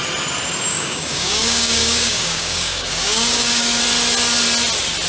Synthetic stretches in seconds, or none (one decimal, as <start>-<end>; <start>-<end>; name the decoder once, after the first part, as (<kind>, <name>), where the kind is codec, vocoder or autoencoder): 0.7-3.8 (codec, DAC)